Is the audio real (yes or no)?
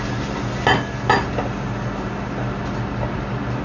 yes